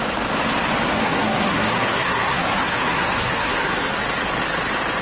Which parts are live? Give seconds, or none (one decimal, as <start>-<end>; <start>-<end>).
0.0-0.9; 3.9-5.0